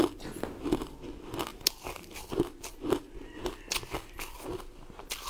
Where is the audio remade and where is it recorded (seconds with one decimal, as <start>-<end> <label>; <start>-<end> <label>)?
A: 0.0-1.5 recorded; 1.5-2.2 remade; 2.2-5.3 recorded